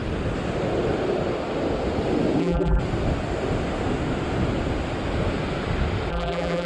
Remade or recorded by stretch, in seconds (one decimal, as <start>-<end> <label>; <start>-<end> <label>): 0.0-2.4 recorded; 2.4-2.8 remade; 2.8-6.1 recorded; 6.1-6.7 remade